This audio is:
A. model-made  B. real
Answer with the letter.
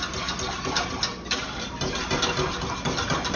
B